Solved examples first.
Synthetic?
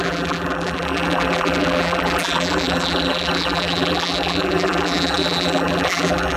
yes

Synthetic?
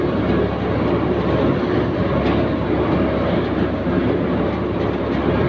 no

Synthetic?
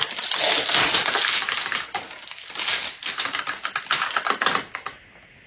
no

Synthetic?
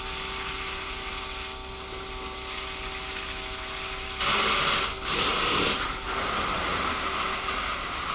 no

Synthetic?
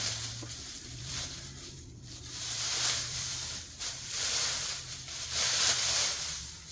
yes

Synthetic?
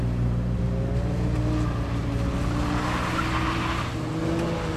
no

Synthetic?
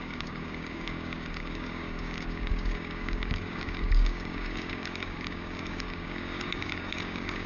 yes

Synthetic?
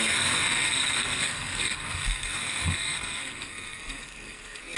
yes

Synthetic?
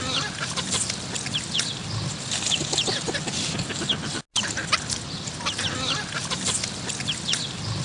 no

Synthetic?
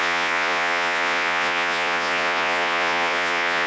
yes